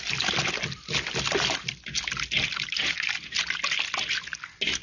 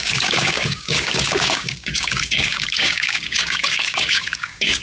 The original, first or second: first